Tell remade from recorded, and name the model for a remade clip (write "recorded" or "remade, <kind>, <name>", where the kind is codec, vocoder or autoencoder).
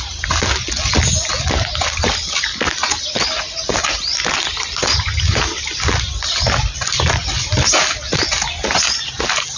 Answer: recorded